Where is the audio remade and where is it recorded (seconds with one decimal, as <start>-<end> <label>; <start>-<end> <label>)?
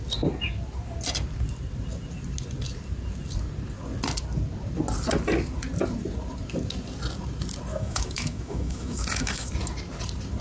0.0-7.7 recorded; 7.7-9.5 remade; 9.5-10.4 recorded